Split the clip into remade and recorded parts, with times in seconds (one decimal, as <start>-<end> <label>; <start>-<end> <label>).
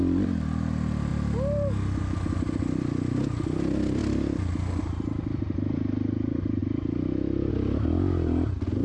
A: 0.0-8.8 recorded